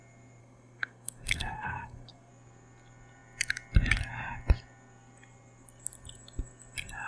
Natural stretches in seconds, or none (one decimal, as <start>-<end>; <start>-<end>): 0.0-0.4; 2.3-7.1